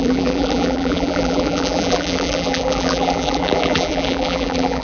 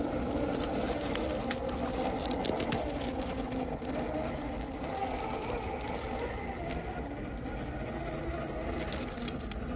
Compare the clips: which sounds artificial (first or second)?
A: first